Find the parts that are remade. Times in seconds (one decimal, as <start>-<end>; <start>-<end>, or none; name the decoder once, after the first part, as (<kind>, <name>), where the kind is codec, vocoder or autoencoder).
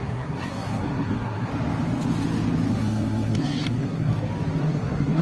0.0-1.5 (codec, SNAC); 2.7-4.1; 4.6-5.2